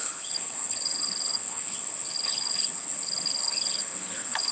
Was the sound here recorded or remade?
remade